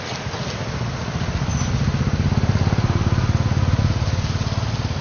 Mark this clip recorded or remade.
recorded